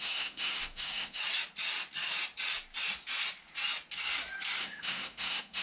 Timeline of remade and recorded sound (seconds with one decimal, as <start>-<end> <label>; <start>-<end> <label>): 0.0-1.2 remade; 1.2-4.6 recorded; 4.6-5.6 remade